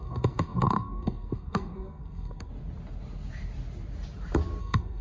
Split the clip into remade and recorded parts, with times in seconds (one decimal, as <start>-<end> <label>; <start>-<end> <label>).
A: 0.0-2.5 remade; 2.5-4.6 recorded; 4.6-5.0 remade